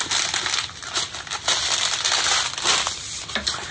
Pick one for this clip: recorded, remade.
remade